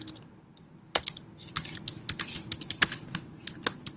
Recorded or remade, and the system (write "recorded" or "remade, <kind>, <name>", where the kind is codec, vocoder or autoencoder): recorded